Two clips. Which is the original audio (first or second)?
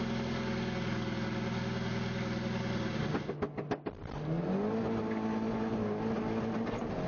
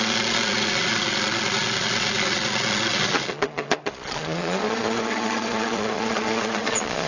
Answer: first